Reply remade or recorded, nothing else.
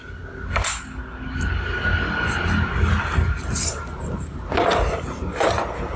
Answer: recorded